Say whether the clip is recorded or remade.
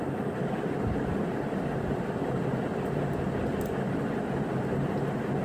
recorded